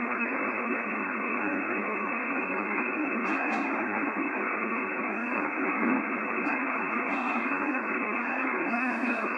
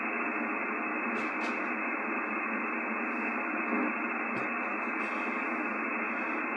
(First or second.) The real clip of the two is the second